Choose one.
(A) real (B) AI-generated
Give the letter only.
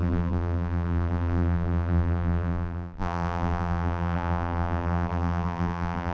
B